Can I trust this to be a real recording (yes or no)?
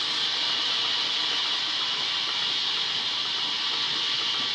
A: yes